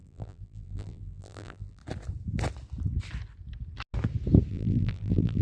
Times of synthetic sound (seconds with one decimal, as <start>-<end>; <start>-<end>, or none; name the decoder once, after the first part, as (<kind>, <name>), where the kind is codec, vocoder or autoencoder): 0.0-1.8 (vocoder, BigVGAN v2); 4.5-5.4